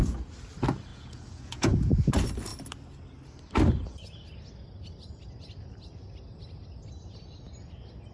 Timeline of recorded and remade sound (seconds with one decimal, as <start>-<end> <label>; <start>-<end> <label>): 0.0-0.9 recorded; 0.9-2.1 remade; 2.1-8.1 recorded